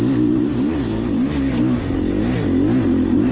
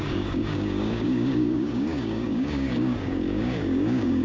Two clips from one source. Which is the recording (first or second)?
first